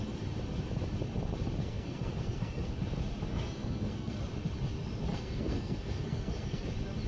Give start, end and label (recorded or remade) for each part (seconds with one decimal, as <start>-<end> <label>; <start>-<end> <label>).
0.0-1.6 recorded; 1.6-2.7 remade; 2.7-3.3 recorded; 3.3-4.2 remade; 4.2-5.1 recorded; 5.1-6.6 remade; 6.6-7.1 recorded